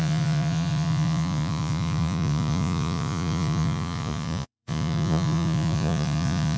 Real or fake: fake